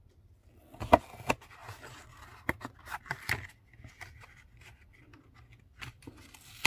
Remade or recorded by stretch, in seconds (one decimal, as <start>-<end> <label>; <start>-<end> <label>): 0.0-6.7 recorded